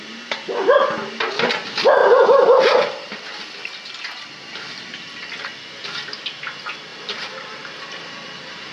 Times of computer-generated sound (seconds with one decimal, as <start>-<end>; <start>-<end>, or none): 2.0-2.6; 6.9-8.7